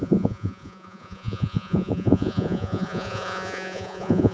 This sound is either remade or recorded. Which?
remade